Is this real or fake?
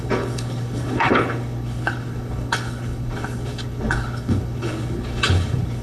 fake